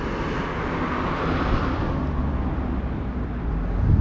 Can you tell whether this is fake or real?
real